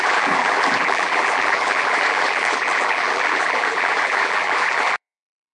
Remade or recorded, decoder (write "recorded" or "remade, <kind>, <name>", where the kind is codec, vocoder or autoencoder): remade, vocoder, BigVGAN v2